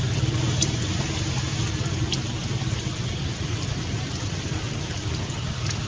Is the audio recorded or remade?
recorded